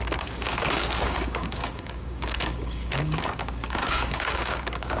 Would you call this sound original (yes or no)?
no